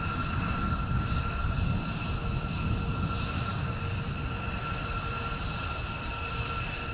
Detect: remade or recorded recorded